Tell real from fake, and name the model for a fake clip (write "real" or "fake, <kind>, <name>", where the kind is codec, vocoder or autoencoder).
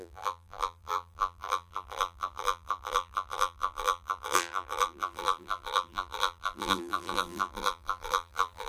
fake, vocoder, BigVGAN v2